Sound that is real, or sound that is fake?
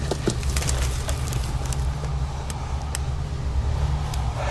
real